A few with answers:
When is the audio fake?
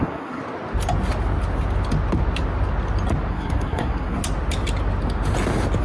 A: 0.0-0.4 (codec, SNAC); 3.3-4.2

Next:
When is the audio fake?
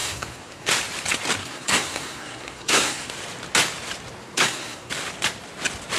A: 0.0-0.7 (codec, SNAC); 1.4-3.1; 4.2-4.9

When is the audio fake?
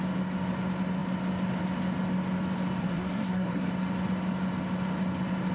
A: 2.8-3.7 (codec, SNAC)